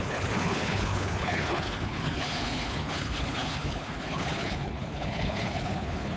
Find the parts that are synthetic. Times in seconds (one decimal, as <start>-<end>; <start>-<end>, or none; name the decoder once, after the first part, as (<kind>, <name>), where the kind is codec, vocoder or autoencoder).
0.0-6.2 (codec, HILCodec)